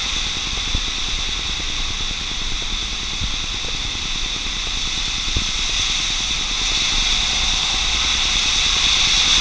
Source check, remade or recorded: recorded